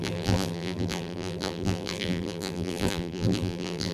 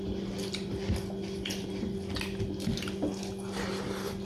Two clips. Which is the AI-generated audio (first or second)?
first